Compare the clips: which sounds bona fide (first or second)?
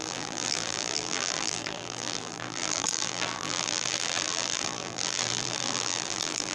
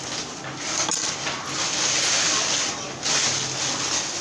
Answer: second